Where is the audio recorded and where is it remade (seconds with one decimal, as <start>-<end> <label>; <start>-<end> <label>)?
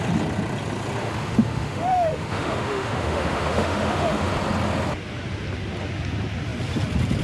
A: 0.0-1.0 recorded; 1.0-4.3 remade; 4.3-7.2 recorded